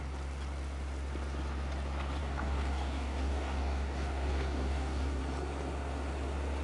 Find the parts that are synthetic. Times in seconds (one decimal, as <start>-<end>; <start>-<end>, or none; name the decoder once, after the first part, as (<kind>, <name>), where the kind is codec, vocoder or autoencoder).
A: 2.2-5.2 (codec, DAC)